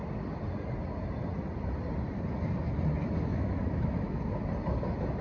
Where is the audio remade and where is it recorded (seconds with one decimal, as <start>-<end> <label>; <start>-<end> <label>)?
0.0-3.3 recorded; 3.3-4.2 remade; 4.2-5.2 recorded

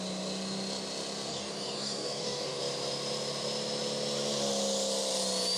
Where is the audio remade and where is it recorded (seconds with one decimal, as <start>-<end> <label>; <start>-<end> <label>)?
0.0-1.3 recorded; 1.3-2.6 remade; 2.6-5.6 recorded

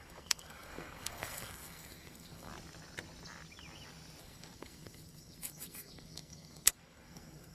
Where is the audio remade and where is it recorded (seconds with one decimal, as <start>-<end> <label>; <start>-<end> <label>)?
0.0-2.5 remade; 2.5-4.2 recorded; 4.2-7.5 remade

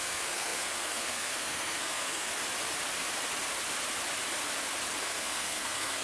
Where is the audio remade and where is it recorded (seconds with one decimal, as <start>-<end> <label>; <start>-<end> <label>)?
0.0-2.3 remade; 2.3-5.0 recorded; 5.0-6.0 remade

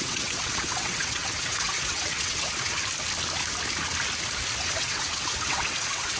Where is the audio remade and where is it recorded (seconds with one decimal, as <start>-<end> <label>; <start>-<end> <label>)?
0.0-2.7 remade; 2.7-4.6 recorded; 4.6-6.2 remade

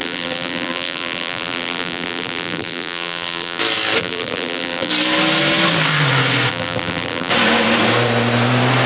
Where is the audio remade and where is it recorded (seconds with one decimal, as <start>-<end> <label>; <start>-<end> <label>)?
0.0-3.6 remade; 3.6-4.0 recorded; 4.0-4.9 remade; 4.9-6.5 recorded; 6.5-7.3 remade; 7.3-8.9 recorded